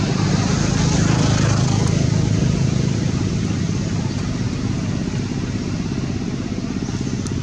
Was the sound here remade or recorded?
recorded